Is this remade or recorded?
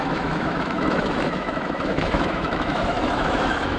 remade